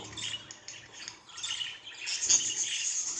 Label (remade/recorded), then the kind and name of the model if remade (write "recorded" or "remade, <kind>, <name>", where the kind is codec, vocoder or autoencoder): recorded